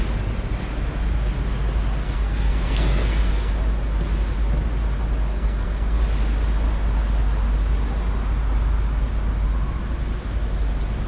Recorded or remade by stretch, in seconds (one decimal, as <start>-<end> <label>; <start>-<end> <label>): 0.0-2.0 recorded; 2.0-3.5 remade; 3.5-5.3 recorded; 5.3-6.0 remade; 6.0-11.1 recorded